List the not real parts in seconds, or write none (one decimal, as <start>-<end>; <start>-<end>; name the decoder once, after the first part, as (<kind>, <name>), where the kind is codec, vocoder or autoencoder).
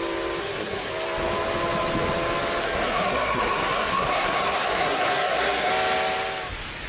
0.4-0.9 (codec, SNAC); 2.6-5.7